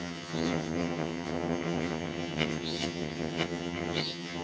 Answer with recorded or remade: remade